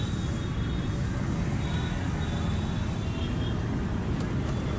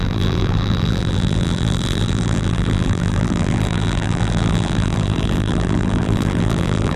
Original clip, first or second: first